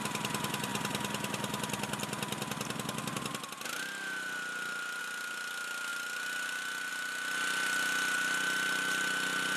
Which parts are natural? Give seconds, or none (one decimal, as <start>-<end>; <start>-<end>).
0.0-9.6

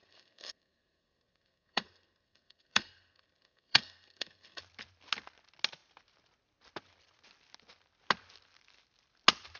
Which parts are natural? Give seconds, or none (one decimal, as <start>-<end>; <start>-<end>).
4.6-9.6

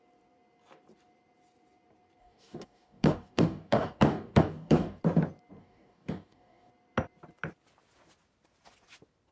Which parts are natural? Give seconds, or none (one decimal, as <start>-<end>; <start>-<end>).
0.0-2.2; 5.0-5.6; 6.7-9.3

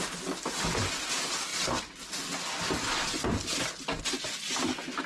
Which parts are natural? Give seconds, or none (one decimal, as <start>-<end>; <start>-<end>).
0.0-5.1